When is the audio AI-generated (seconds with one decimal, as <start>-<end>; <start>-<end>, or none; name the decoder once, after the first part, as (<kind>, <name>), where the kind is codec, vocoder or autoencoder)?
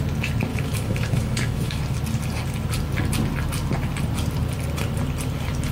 0.5-1.8 (autoencoder, DAC-VAE)